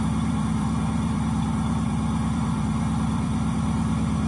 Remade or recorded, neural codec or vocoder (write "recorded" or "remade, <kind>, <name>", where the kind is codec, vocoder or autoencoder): remade, vocoder, BigVGAN v2